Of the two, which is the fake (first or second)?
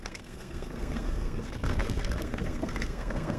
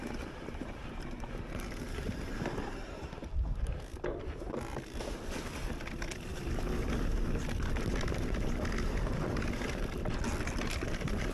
first